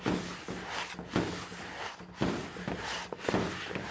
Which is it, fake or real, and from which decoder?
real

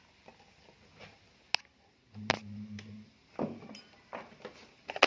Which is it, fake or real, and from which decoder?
real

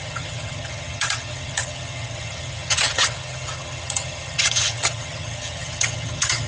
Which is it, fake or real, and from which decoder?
fake, vocoder, HiFi-GAN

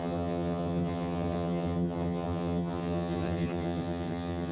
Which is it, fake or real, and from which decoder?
fake, vocoder, HiFi-GAN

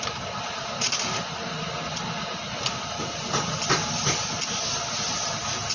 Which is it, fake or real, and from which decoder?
real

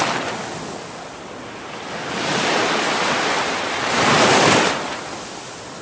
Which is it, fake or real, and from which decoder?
real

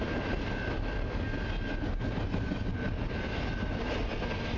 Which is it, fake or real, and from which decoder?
real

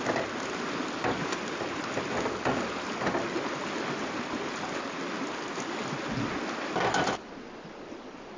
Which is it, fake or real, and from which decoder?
real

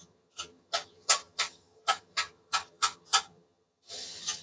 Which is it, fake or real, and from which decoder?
fake, vocoder, HiFi-GAN